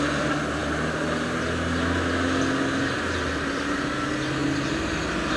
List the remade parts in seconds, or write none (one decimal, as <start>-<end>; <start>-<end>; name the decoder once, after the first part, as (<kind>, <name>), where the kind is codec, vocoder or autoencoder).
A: none